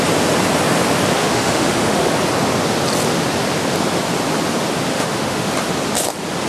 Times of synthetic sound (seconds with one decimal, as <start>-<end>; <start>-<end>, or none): 1.2-2.1; 4.9-5.5